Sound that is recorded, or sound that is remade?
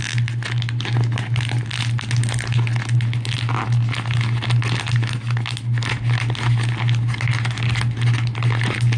recorded